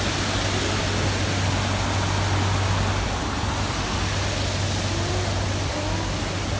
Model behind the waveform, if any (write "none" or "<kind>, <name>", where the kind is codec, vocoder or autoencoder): none